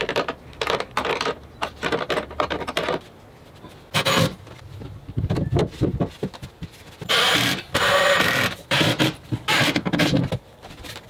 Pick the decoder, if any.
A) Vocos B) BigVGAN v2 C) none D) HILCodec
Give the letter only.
B